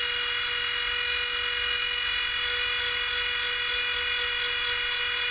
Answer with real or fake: real